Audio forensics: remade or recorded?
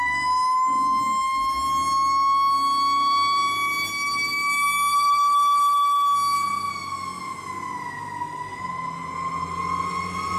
recorded